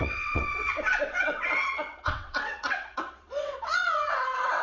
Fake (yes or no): yes